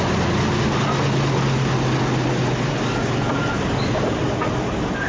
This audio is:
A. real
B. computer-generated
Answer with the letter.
A